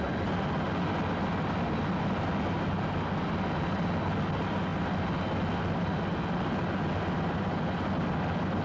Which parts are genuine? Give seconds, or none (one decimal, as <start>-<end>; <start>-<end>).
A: 0.0-8.6